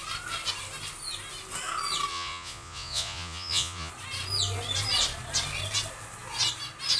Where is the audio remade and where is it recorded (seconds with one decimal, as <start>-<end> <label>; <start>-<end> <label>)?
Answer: 0.0-2.1 recorded; 2.1-3.9 remade; 3.9-7.0 recorded